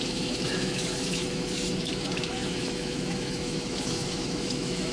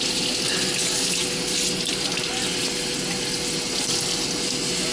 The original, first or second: second